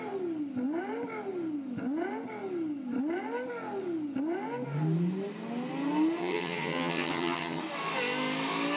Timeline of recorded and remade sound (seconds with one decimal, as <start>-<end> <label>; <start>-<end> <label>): 0.0-6.2 recorded; 6.2-7.6 remade; 7.6-8.8 recorded